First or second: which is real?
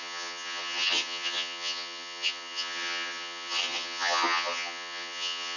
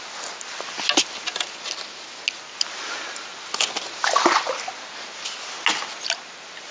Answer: second